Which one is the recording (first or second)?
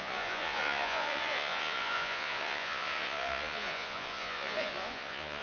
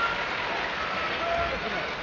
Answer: second